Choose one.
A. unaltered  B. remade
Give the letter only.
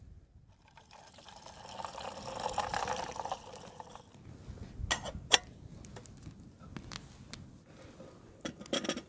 A